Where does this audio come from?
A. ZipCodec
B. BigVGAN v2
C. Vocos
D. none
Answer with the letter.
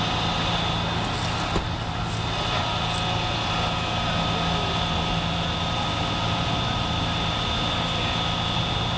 D